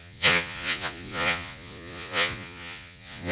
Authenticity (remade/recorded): remade